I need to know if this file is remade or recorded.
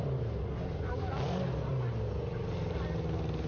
recorded